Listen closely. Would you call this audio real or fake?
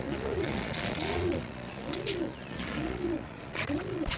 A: fake